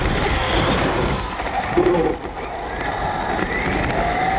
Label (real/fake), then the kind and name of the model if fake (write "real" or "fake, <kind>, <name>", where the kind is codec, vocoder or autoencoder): real